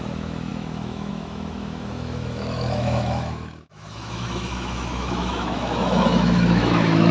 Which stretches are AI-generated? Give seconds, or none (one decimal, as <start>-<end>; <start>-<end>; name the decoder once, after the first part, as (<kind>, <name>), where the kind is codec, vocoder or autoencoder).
0.0-7.1 (autoencoder, DAC-VAE)